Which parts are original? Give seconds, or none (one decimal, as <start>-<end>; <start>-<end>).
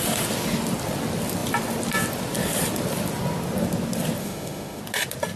0.0-4.2; 4.8-5.4